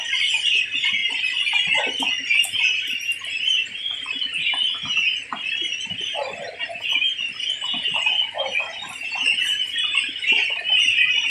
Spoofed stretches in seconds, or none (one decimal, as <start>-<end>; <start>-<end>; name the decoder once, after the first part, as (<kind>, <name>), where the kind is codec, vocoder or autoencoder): none